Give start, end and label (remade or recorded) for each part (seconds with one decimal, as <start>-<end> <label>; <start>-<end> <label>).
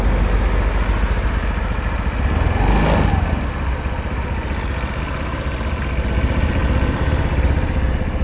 0.0-8.2 recorded